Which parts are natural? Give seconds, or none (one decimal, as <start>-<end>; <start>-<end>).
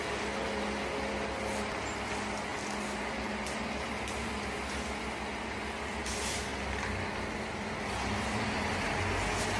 0.0-9.6